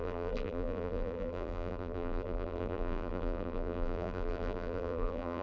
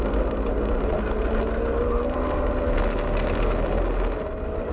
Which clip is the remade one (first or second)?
first